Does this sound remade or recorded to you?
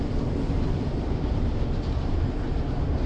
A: remade